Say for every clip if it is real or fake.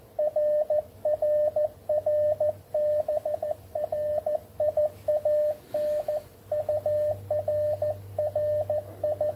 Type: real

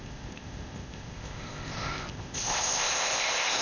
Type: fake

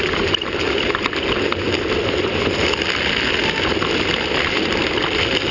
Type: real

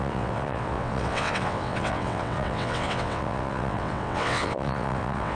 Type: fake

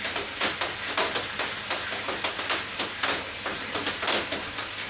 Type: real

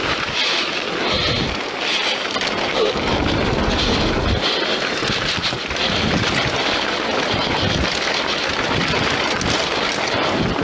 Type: real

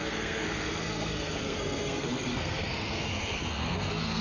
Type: fake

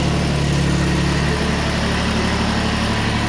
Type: real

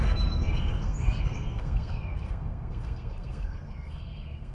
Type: fake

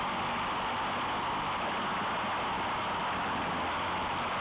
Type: real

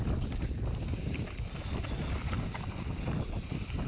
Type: real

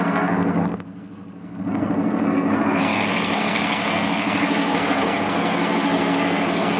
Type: fake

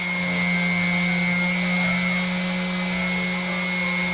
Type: real